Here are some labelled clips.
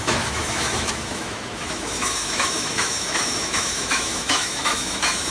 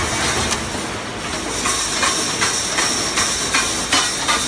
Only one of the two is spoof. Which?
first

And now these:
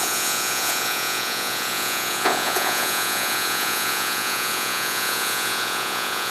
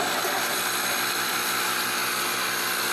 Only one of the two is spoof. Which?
first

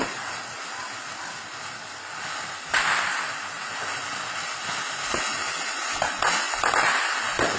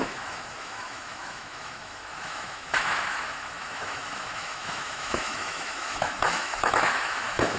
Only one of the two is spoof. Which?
second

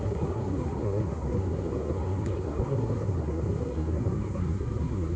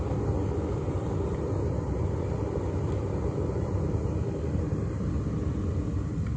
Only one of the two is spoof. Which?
first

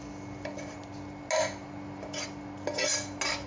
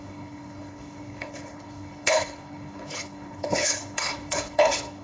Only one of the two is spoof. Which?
second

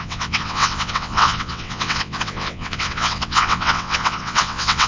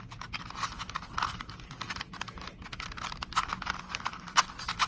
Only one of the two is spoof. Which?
first